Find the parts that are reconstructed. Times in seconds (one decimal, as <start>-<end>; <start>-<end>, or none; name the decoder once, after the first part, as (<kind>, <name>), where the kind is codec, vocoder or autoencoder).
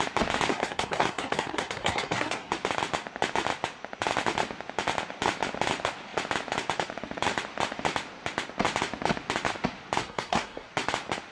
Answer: 0.5-2.5 (codec, SNAC); 10.0-10.7